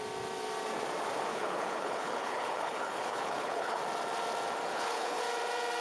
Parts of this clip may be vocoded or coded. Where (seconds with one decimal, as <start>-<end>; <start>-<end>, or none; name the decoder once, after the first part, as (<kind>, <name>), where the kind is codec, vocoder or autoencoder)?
1.3-3.8 (codec, HILCodec); 4.7-5.2